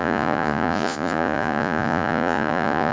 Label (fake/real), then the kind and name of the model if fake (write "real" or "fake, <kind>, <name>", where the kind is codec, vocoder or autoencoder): fake, vocoder, Vocos